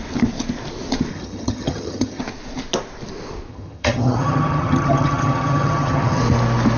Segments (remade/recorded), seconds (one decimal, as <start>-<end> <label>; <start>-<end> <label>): 0.0-1.1 recorded; 1.1-2.2 remade; 2.2-3.5 recorded; 3.5-6.2 remade; 6.2-6.8 recorded